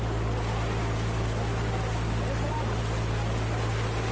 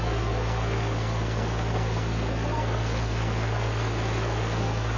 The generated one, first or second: second